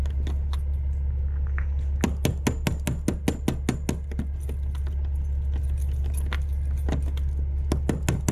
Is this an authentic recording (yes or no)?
yes